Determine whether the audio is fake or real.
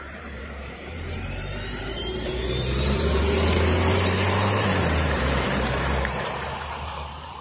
fake